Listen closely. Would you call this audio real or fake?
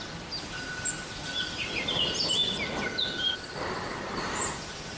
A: real